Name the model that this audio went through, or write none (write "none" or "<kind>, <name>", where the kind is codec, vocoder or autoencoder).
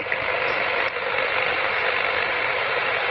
none